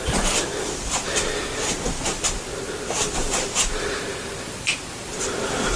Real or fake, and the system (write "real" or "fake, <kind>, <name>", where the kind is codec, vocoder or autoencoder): fake, vocoder, BigVGAN v2